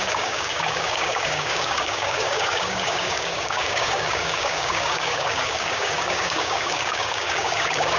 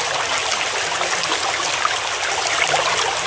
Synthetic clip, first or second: first